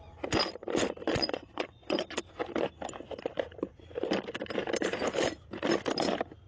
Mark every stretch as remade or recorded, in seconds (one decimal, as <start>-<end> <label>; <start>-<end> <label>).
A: 0.0-1.1 recorded; 1.1-2.3 remade; 2.3-6.5 recorded